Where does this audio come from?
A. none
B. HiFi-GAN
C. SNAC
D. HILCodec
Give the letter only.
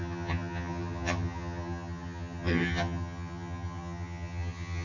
B